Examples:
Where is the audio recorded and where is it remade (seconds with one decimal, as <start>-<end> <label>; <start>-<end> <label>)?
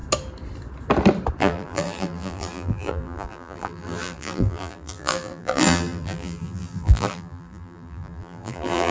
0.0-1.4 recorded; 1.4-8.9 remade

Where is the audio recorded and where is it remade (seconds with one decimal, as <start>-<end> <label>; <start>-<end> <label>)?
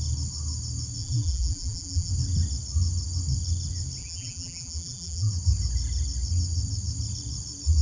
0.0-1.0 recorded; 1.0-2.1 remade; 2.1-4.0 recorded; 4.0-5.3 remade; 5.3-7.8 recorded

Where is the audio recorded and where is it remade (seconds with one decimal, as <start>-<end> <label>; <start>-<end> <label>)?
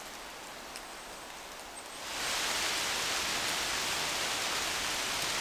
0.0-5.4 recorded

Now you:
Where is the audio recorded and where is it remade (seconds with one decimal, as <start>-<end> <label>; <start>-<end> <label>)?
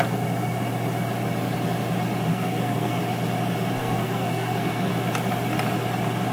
0.0-2.3 recorded; 2.3-3.0 remade; 3.0-3.8 recorded; 3.8-4.9 remade; 4.9-6.3 recorded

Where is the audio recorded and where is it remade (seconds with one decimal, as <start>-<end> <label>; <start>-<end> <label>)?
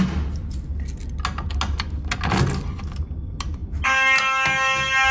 0.0-5.1 recorded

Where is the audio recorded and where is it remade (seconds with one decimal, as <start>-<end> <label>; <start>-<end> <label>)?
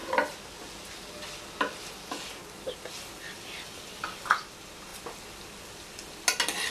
0.0-6.7 recorded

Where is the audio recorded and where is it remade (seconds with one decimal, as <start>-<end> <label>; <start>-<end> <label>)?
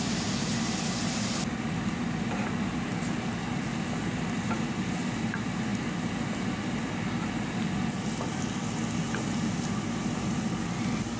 0.0-11.2 recorded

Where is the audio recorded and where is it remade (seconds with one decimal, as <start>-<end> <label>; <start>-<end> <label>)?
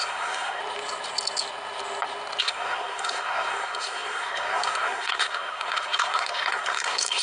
0.0-0.6 remade; 0.6-2.4 recorded; 2.4-7.2 remade